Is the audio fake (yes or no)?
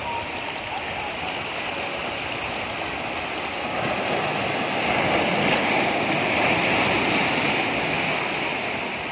no